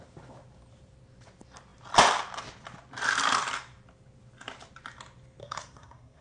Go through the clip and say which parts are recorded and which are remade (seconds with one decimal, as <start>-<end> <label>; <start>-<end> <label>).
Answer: 0.0-5.4 recorded; 5.4-6.2 remade

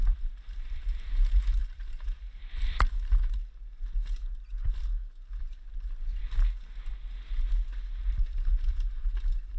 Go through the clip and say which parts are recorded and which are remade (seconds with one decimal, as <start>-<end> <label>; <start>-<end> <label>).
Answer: 0.0-3.4 remade; 3.4-5.3 recorded; 5.3-6.2 remade; 6.2-8.0 recorded; 8.0-9.6 remade

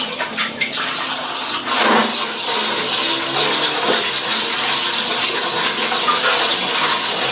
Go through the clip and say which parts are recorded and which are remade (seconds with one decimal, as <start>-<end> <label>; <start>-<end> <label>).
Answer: 0.0-0.4 recorded; 0.4-1.4 remade; 1.4-7.3 recorded

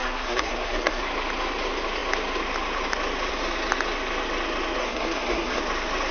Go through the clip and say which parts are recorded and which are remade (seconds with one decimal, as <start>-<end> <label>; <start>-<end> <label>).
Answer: 0.0-1.0 remade; 1.0-4.8 recorded; 4.8-5.6 remade; 5.6-6.1 recorded

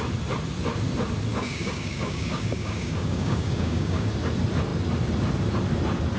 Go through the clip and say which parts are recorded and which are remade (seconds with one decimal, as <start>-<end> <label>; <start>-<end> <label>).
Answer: 0.0-1.3 recorded; 1.3-4.1 remade; 4.1-6.2 recorded

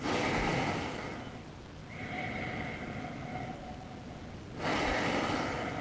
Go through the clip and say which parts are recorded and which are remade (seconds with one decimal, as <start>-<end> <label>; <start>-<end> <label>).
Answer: 0.0-5.8 recorded

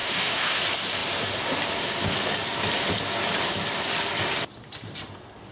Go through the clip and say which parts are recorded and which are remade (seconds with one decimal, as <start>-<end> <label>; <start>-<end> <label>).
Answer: 0.0-0.6 remade; 0.6-5.5 recorded

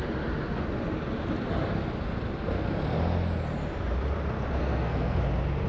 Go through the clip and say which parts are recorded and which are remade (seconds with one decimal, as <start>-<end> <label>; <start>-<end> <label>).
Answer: 0.0-4.6 recorded; 4.6-5.2 remade; 5.2-5.7 recorded